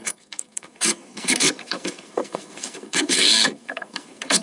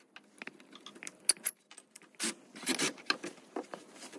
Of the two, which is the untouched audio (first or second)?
second